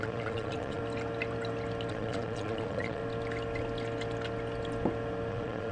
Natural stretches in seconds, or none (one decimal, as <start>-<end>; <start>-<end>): 0.8-1.9; 3.0-5.3